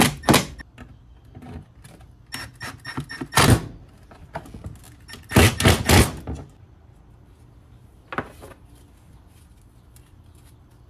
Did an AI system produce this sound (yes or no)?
no